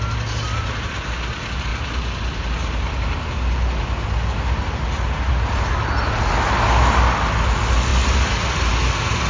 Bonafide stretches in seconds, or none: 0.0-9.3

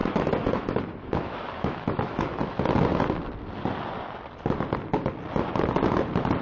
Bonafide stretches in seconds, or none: 2.4-6.4

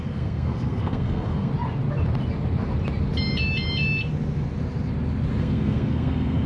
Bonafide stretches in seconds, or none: 1.5-5.4

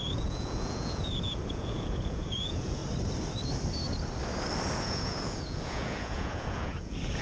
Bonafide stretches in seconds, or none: 2.8-4.8

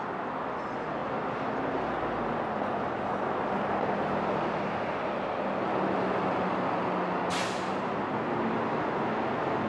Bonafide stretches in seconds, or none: 0.0-9.7

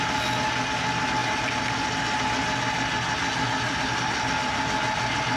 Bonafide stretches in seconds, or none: 0.0-5.4